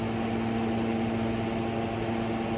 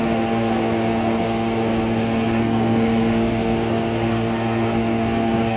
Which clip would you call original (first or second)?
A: first